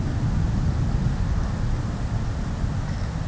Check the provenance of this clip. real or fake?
real